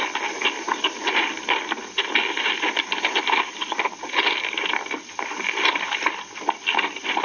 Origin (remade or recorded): recorded